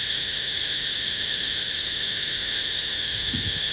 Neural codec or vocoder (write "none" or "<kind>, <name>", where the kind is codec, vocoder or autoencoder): autoencoder, DAC-VAE